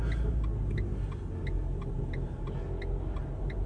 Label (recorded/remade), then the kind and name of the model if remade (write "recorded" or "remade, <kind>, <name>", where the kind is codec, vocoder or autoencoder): recorded